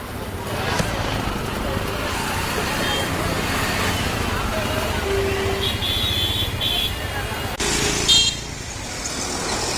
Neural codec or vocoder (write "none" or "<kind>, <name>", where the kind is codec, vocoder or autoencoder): none